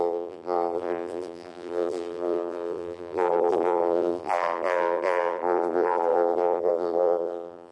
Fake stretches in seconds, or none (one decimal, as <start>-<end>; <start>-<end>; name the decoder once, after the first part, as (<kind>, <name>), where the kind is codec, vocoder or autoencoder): 0.0-7.7 (vocoder, BigVGAN v2)